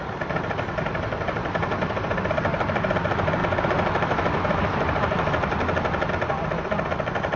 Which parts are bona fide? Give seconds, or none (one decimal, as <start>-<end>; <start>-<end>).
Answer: 0.0-1.4; 2.3-3.4; 6.1-7.4